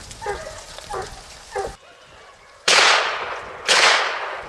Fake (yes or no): yes